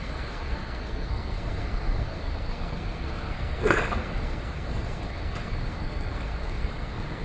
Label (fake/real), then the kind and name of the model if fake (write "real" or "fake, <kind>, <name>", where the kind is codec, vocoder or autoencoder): fake, codec, SNAC